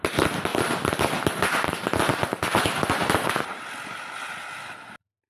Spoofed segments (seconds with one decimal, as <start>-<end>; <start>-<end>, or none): none